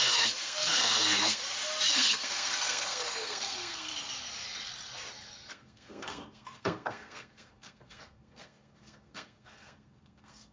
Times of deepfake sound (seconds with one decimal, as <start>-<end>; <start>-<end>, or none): 0.0-1.4; 1.9-3.9; 5.5-10.5